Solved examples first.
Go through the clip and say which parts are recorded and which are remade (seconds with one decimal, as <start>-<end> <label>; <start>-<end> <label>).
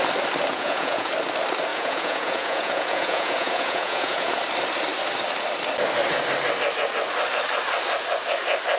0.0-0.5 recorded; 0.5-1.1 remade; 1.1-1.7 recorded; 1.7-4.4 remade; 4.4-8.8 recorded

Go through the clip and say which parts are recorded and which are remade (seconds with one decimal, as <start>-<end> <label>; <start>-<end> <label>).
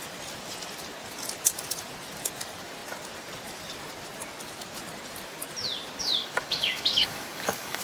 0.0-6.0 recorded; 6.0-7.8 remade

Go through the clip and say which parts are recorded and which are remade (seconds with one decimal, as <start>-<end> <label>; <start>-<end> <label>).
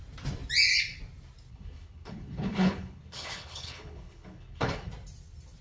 0.0-1.5 recorded; 1.5-4.9 remade; 4.9-5.6 recorded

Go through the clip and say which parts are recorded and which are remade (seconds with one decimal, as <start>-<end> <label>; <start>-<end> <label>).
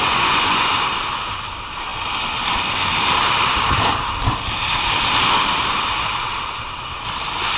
0.0-0.7 remade; 0.7-7.6 recorded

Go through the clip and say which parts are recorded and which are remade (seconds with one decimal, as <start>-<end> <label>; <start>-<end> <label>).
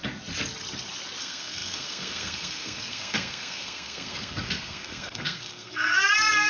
0.0-1.2 recorded; 1.2-6.5 remade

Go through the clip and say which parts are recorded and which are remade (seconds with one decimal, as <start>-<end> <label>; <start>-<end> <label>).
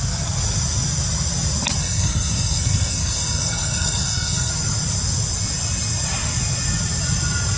0.0-1.8 recorded; 1.8-4.5 remade; 4.5-7.6 recorded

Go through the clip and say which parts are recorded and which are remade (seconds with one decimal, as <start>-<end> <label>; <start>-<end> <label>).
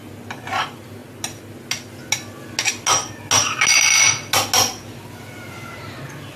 0.0-6.4 recorded